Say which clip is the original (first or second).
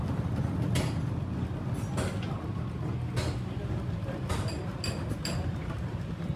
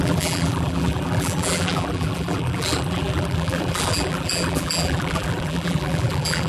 first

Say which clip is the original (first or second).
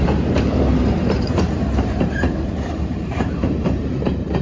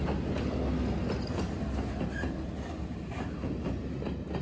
second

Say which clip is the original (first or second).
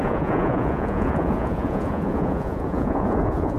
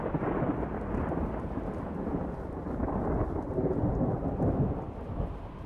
second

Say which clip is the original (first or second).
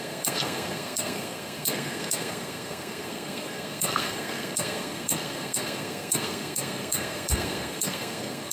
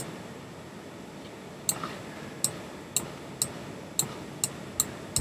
second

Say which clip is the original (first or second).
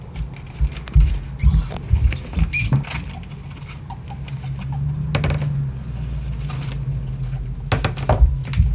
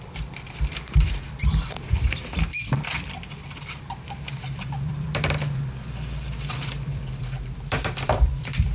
first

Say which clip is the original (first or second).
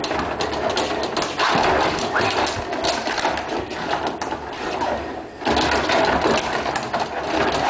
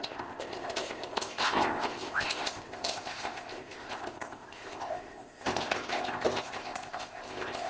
first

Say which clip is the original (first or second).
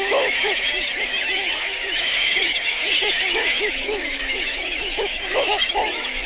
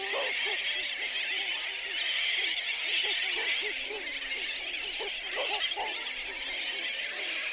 second